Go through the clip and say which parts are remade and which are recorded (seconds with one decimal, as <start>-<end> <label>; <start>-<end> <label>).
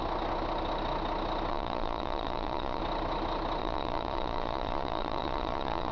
0.0-1.5 recorded; 1.5-2.8 remade; 2.8-3.6 recorded; 3.6-5.9 remade